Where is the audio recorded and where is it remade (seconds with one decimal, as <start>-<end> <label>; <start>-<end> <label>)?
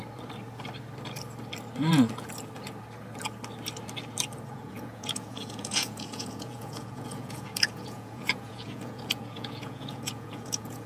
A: 0.0-4.5 recorded; 4.5-10.9 remade